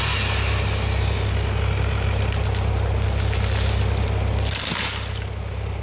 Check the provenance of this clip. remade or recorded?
recorded